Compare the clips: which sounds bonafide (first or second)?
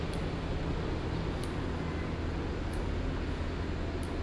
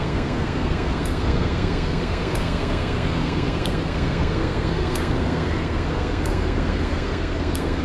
first